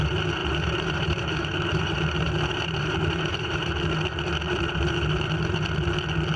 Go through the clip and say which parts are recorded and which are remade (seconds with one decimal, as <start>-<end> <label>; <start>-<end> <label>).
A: 0.0-0.4 recorded; 0.4-3.9 remade; 3.9-6.4 recorded

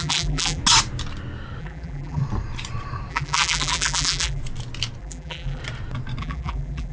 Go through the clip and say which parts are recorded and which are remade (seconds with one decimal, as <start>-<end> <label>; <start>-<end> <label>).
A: 0.0-0.6 remade; 0.6-1.6 recorded; 1.6-2.2 remade; 2.2-3.1 recorded; 3.1-4.4 remade; 4.4-5.0 recorded; 5.0-5.6 remade; 5.6-6.2 recorded; 6.2-6.9 remade

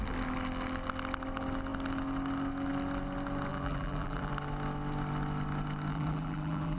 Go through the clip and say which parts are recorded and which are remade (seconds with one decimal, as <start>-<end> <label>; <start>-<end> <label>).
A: 0.0-3.5 recorded; 3.5-4.3 remade; 4.3-5.9 recorded; 5.9-6.8 remade

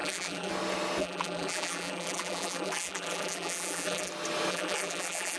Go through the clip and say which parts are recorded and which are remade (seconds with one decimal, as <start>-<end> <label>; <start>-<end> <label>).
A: 0.0-0.5 remade; 0.5-1.0 recorded; 1.0-4.1 remade; 4.1-4.5 recorded; 4.5-5.4 remade

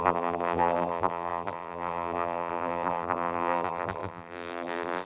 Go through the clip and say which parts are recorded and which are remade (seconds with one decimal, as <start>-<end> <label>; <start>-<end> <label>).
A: 0.0-5.1 remade

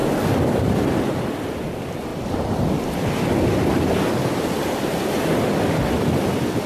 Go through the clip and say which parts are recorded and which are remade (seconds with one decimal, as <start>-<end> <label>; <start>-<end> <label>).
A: 0.0-1.3 remade; 1.3-6.7 recorded

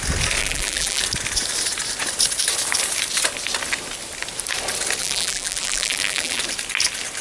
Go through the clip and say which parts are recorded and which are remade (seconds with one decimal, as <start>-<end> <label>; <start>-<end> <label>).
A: 0.0-0.4 recorded; 0.4-1.0 remade; 1.0-5.0 recorded; 5.0-6.4 remade; 6.4-7.2 recorded